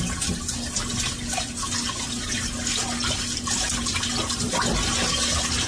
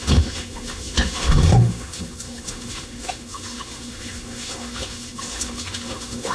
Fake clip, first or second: second